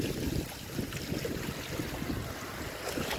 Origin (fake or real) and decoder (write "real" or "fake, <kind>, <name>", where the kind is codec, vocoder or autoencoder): real